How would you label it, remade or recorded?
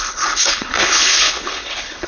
remade